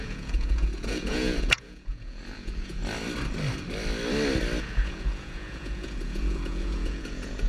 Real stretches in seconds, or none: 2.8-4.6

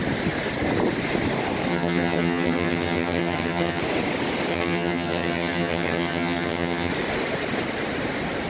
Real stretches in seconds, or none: 0.0-1.7; 3.8-4.5; 6.9-8.5

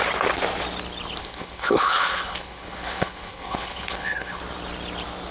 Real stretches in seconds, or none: 0.0-1.2; 4.4-5.3

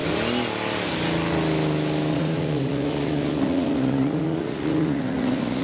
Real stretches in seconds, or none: 0.0-2.1

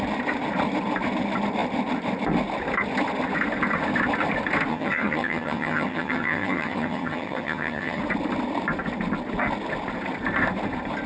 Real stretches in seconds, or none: 0.0-4.7; 8.0-11.1